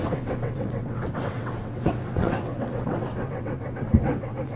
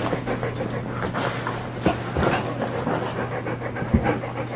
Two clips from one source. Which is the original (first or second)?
second